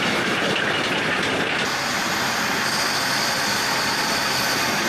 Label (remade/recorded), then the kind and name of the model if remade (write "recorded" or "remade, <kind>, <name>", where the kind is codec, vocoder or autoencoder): recorded